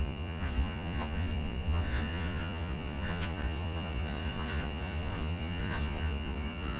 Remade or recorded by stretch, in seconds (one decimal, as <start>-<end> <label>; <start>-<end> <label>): 0.0-6.8 remade